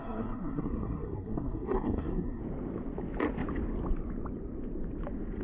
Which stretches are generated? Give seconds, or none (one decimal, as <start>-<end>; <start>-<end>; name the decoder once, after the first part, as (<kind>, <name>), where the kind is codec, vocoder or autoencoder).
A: 0.0-2.4 (codec, SNAC)